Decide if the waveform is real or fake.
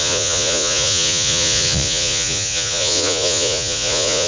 fake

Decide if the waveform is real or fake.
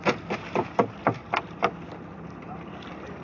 real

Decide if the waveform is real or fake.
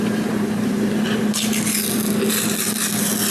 fake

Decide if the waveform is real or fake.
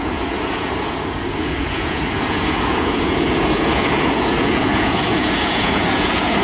fake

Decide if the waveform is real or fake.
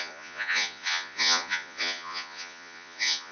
fake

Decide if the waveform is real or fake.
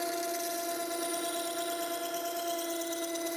real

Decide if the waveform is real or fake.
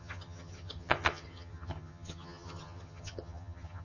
fake